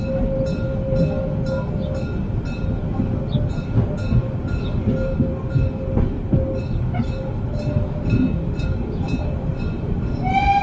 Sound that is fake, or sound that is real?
real